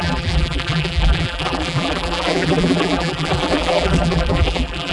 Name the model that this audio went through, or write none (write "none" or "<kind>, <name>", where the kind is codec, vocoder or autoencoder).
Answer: vocoder, BigVGAN v2